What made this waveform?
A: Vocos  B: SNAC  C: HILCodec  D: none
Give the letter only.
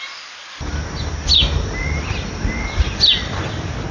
D